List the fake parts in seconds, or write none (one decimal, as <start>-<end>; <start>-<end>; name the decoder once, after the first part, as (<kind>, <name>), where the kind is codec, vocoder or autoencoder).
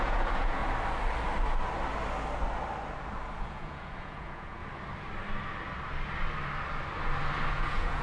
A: 0.0-0.6 (vocoder, Vocos); 3.4-4.6; 7.5-8.0